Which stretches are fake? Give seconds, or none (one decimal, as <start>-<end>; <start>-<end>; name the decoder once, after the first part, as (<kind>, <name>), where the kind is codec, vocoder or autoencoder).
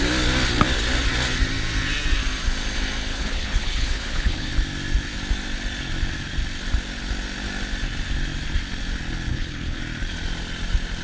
3.1-4.5 (codec, HILCodec); 9.3-9.8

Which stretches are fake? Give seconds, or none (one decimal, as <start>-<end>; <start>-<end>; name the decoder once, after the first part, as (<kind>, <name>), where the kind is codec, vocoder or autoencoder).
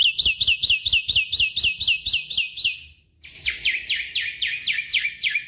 none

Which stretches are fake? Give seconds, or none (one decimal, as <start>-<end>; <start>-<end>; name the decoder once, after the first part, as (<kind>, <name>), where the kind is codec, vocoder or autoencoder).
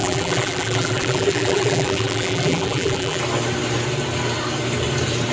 0.0-3.2 (vocoder, BigVGAN v2)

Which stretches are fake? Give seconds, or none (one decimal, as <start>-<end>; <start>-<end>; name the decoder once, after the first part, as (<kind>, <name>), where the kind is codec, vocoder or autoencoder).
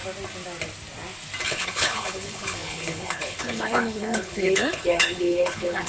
1.5-5.9 (codec, HILCodec)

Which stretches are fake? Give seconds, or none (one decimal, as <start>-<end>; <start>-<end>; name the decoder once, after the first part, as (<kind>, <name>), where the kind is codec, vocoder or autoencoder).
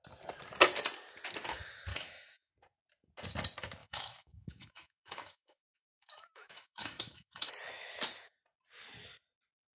1.9-2.5 (autoencoder, DAC-VAE); 3.8-7.5